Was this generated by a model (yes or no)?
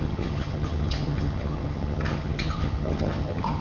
yes